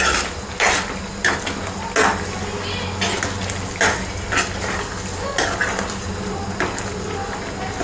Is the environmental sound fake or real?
real